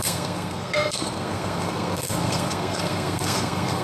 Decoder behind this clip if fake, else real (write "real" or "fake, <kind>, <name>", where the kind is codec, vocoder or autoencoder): fake, codec, SNAC